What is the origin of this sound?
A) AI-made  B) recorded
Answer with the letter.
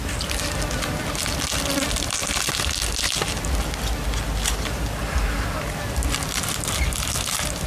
B